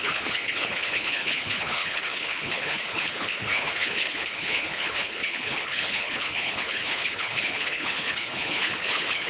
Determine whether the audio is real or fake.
fake